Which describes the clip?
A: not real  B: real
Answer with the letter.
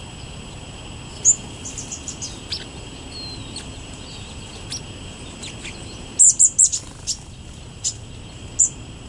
B